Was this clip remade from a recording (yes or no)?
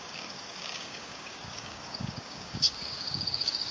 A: yes